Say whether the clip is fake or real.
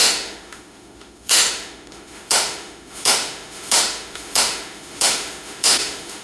fake